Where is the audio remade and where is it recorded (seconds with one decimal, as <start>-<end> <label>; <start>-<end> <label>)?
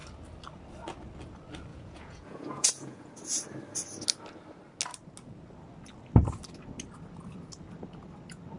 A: 0.0-1.7 recorded; 1.7-3.1 remade; 3.1-8.6 recorded